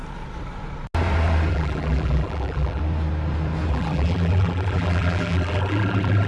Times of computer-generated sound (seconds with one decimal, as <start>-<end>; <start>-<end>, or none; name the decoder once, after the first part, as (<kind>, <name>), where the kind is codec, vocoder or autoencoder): 1.5-2.8 (vocoder, BigVGAN v2); 3.7-6.3